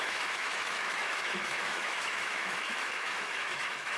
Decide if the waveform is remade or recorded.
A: remade